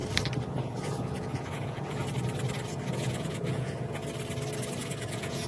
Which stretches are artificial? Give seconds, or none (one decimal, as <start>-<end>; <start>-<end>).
0.5-2.0; 2.7-4.0; 4.8-5.5